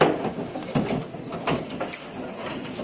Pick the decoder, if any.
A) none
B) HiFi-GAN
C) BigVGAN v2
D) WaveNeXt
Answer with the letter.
A